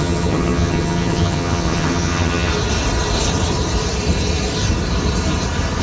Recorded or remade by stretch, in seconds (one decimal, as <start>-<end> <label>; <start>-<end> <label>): 0.0-2.5 remade; 2.5-5.8 recorded